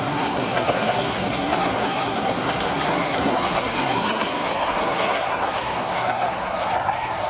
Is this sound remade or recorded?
remade